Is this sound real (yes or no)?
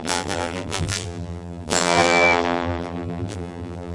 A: no